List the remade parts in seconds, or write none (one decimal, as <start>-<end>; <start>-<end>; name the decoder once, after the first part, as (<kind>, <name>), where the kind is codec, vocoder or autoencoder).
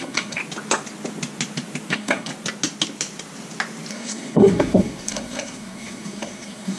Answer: 0.0-0.4 (codec, SNAC); 1.9-2.3; 3.9-6.8